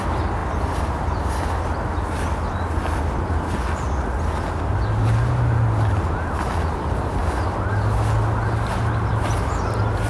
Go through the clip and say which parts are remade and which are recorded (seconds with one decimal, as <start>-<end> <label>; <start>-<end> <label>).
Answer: 0.0-10.1 recorded